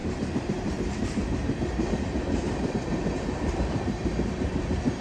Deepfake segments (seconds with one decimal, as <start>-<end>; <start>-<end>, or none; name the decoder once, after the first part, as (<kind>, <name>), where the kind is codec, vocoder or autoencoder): 0.0-5.0 (vocoder, BigVGAN v2)

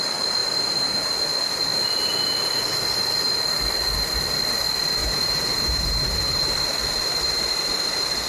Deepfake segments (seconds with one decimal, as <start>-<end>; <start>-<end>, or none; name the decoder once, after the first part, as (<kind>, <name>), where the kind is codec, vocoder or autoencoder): 0.4-1.0 (vocoder, BigVGAN v2); 5.0-6.6; 7.0-8.3